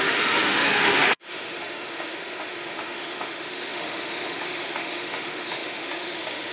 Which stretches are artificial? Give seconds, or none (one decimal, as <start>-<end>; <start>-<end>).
0.0-6.5